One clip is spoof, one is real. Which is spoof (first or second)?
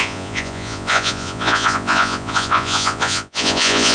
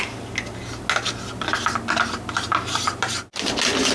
first